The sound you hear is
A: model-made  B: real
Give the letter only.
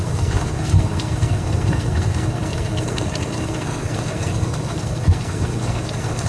A